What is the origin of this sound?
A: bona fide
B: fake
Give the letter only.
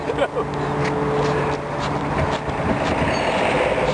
A